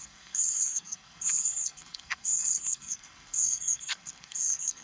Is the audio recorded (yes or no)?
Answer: no